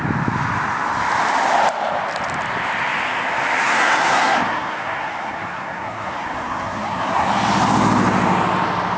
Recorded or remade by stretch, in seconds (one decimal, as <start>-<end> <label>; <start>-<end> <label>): 0.0-3.6 recorded; 3.6-7.3 remade; 7.3-9.0 recorded